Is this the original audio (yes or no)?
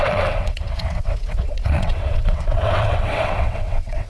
no